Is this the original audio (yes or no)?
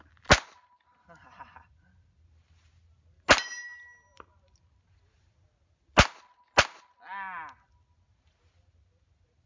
yes